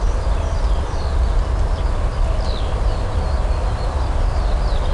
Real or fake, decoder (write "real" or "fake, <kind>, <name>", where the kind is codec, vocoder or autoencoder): real